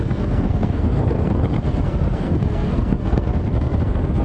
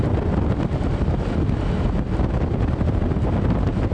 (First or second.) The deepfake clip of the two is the first